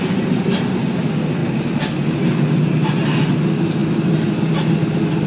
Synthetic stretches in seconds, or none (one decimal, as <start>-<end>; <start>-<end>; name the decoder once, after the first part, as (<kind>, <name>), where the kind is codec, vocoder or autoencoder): none